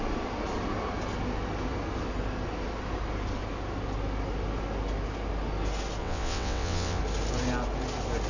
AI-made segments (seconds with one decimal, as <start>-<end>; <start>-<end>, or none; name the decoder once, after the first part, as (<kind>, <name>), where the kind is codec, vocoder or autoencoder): 6.0-7.0 (vocoder, WaveNeXt)